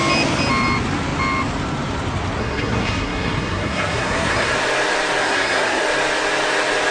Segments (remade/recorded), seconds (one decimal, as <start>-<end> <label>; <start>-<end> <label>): 0.0-2.4 recorded; 2.4-4.5 remade; 4.5-5.2 recorded; 5.2-5.8 remade; 5.8-6.9 recorded